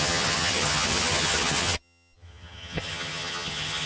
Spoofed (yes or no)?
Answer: yes